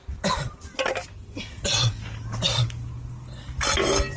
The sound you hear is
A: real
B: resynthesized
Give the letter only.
A